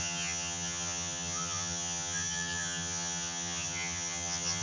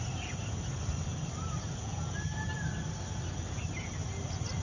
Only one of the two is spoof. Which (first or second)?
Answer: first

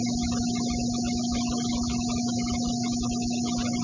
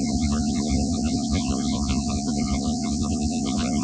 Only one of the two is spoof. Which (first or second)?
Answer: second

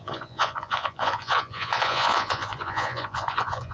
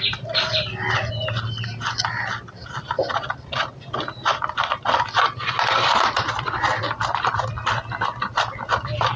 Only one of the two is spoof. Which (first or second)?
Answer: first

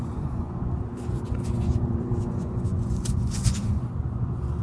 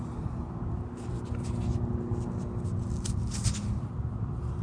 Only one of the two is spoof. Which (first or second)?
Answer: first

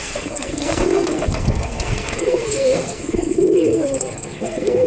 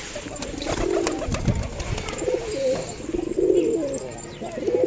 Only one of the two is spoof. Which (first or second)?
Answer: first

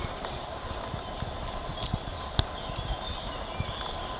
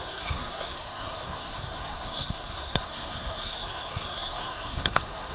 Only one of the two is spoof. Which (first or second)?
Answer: second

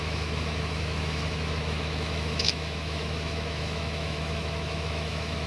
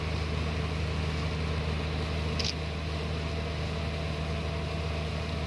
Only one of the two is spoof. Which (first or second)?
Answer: first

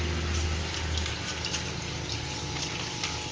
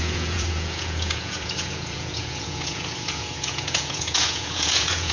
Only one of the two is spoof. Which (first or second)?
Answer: second